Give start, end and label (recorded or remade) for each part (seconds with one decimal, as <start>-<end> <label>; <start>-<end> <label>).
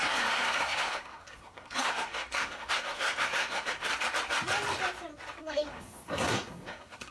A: 0.0-3.9 remade; 3.9-5.4 recorded; 5.4-7.1 remade